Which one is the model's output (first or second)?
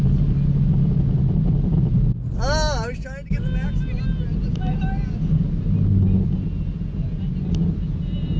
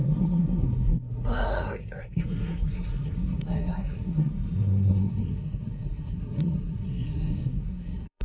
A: second